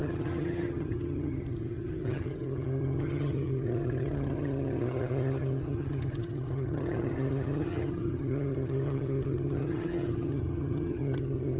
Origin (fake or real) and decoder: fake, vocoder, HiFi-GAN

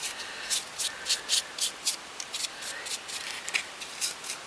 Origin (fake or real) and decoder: real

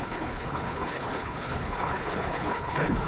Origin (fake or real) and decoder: fake, codec, HILCodec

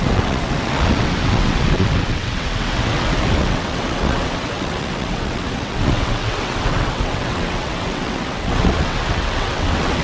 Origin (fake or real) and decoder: fake, vocoder, WaveNeXt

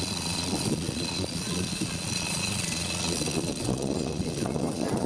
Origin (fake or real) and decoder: fake, vocoder, Vocos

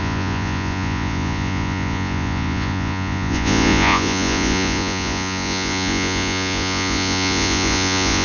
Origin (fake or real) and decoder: fake, vocoder, Vocos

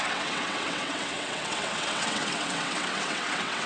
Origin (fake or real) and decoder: fake, vocoder, WaveNeXt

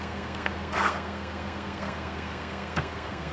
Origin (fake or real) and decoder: fake, codec, SNAC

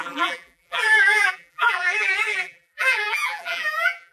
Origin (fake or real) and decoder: fake, vocoder, BigVGAN v2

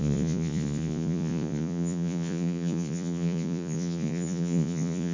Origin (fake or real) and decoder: fake, vocoder, Vocos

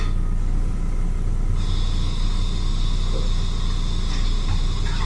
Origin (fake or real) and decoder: real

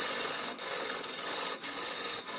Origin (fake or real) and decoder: fake, vocoder, Vocos